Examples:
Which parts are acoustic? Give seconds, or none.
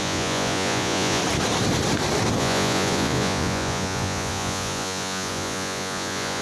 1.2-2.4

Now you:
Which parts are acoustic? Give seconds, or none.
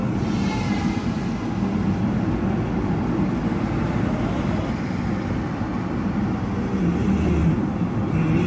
0.0-8.5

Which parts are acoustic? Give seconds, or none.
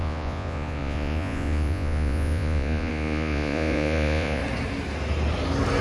4.4-5.8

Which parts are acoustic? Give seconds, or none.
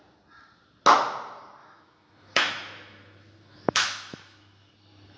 0.0-1.6; 4.7-5.2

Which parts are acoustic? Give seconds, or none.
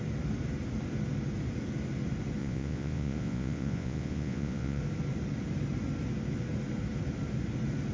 0.0-2.4; 4.8-7.9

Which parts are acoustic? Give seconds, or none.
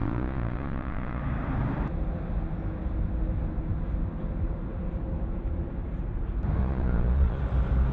1.2-6.6; 7.4-7.9